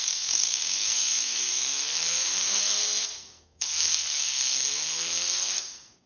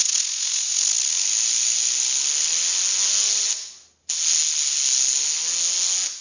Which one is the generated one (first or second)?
first